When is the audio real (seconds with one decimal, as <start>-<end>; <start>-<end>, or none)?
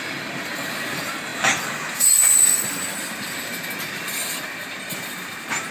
0.0-5.7